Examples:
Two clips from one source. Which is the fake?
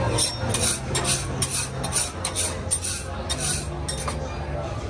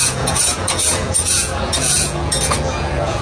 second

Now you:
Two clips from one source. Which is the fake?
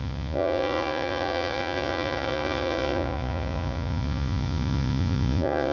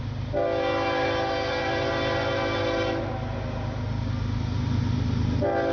first